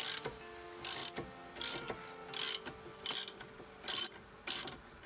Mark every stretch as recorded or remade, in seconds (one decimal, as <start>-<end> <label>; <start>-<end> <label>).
0.0-5.1 recorded